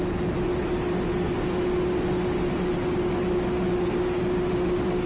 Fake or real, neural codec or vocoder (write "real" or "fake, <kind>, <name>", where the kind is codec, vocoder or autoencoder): real